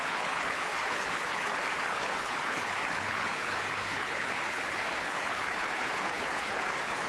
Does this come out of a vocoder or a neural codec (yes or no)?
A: yes